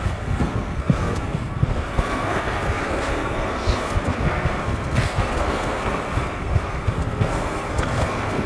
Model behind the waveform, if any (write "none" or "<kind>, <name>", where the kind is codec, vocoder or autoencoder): codec, SNAC